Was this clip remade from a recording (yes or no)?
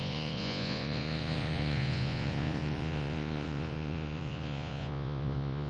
yes